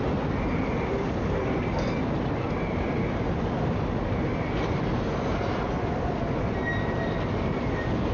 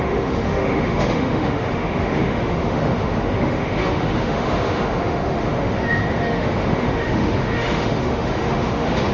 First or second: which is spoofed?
second